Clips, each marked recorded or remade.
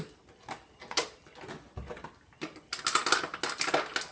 recorded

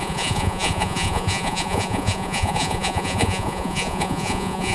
remade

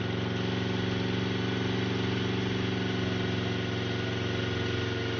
recorded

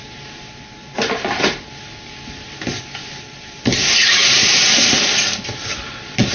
recorded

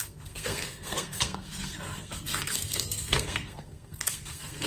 remade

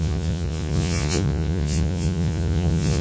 remade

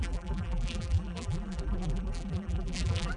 remade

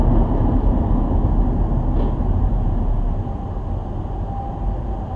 recorded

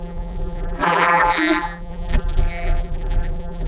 remade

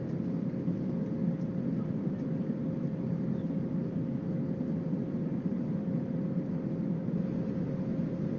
recorded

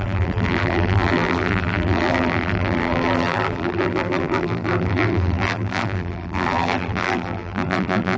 remade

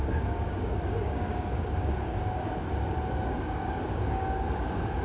remade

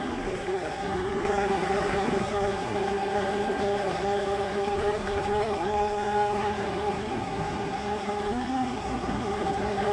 remade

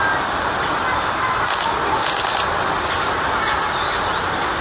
recorded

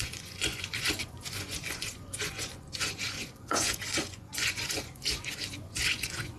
remade